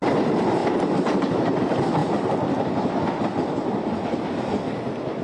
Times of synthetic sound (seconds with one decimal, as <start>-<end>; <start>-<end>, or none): none